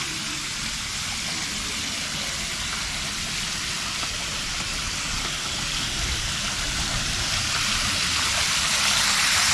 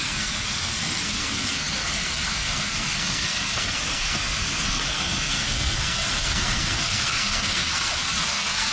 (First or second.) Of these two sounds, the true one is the first